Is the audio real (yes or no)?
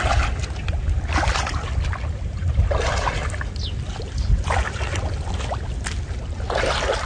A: yes